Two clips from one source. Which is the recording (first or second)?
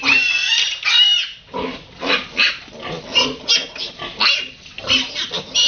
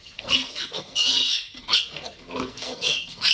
first